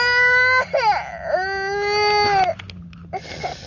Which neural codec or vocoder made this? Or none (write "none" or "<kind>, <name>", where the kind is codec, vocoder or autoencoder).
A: none